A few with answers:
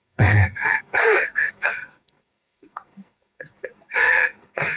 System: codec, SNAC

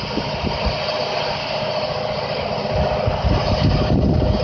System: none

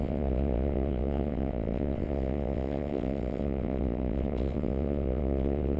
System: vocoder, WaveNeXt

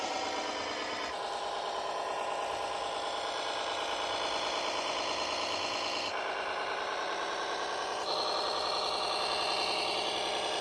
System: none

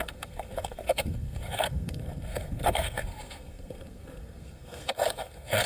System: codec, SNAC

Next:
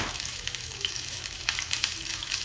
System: autoencoder, DAC-VAE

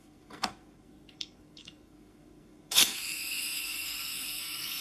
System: codec, SNAC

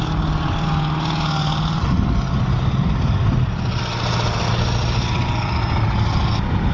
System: none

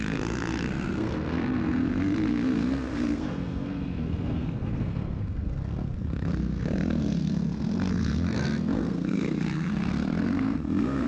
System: codec, SNAC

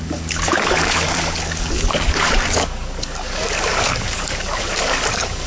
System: codec, DAC